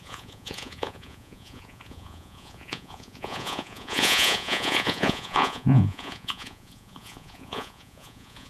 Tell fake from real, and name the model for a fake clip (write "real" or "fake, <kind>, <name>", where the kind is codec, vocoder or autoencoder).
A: fake, vocoder, Vocos